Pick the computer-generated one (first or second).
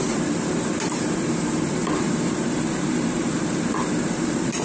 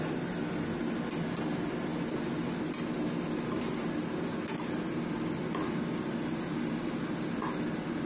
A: first